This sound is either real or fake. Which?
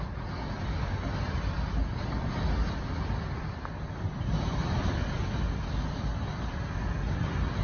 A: real